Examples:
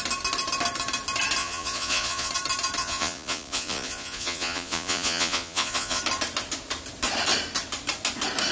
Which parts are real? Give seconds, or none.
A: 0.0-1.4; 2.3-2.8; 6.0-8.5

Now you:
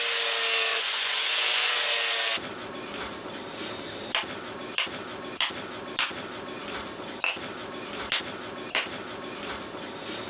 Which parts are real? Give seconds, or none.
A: 0.0-0.7; 1.7-10.3

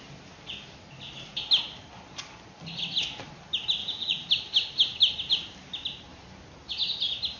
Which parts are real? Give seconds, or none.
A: 0.0-3.8; 4.3-7.4

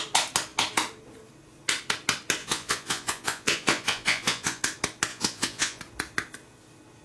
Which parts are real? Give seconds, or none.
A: 0.0-2.4; 4.6-5.1; 5.8-7.0

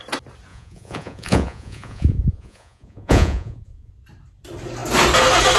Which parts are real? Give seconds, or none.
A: 0.0-0.5; 3.9-5.6